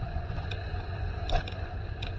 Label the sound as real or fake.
fake